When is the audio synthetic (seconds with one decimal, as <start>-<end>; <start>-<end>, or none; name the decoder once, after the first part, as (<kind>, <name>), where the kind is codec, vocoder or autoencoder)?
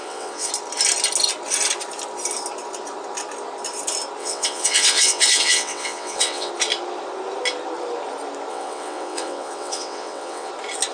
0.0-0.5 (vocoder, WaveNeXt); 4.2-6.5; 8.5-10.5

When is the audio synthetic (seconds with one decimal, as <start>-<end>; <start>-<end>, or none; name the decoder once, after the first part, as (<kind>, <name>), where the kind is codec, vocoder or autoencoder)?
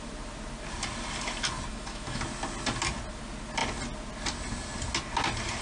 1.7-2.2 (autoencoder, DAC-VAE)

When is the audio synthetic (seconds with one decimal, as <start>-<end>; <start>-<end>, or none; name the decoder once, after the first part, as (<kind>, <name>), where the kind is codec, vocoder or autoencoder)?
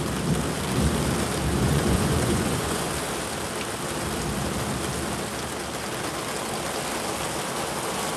1.5-2.9 (vocoder, Vocos)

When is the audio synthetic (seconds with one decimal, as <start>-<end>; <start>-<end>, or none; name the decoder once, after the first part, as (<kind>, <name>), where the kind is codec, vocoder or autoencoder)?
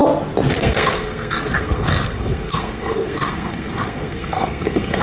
0.5-5.0 (codec, SNAC)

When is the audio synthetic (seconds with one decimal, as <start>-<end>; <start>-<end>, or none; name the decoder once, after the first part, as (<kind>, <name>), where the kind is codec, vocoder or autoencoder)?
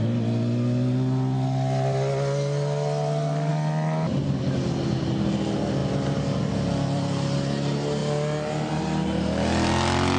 none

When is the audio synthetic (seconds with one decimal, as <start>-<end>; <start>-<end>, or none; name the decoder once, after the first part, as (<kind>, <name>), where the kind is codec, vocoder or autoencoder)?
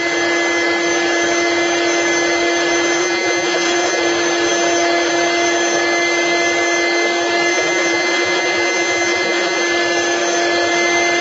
3.0-4.0 (vocoder, Vocos); 7.5-9.6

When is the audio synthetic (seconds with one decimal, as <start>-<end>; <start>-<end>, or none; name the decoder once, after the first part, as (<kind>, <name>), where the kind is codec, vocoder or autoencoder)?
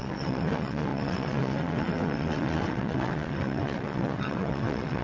0.0-5.0 (vocoder, WaveNeXt)